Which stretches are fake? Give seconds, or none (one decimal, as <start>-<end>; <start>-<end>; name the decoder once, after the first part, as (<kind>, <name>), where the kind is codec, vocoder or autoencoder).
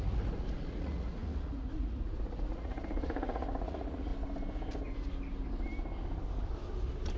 0.0-4.1 (vocoder, Vocos)